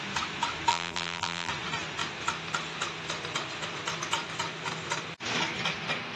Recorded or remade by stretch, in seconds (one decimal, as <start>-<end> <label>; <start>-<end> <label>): 0.0-0.7 recorded; 0.7-1.5 remade; 1.5-6.2 recorded